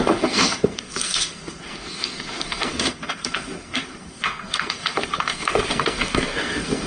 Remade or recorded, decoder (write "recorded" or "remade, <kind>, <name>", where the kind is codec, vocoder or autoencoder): remade, codec, SNAC